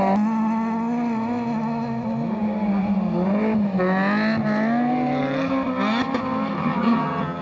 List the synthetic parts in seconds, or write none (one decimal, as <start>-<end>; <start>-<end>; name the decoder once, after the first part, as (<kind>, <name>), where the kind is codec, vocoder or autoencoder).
6.6-7.4 (vocoder, HiFi-GAN)